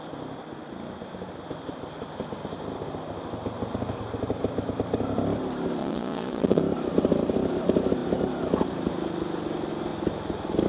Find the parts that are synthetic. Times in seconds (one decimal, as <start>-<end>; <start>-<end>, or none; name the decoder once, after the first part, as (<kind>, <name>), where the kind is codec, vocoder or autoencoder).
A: 5.8-6.6 (vocoder, Vocos)